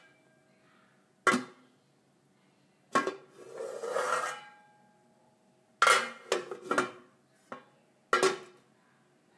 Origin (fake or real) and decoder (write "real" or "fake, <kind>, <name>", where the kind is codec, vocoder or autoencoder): real